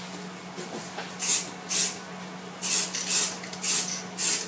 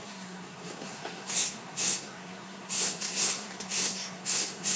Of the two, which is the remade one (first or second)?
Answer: second